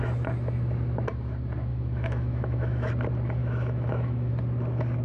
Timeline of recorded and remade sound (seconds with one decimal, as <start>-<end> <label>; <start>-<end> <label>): 0.0-1.7 recorded; 1.7-2.9 remade; 2.9-3.4 recorded; 3.4-4.3 remade; 4.3-5.0 recorded